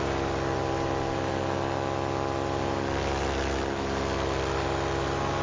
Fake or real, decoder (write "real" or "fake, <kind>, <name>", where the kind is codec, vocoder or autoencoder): real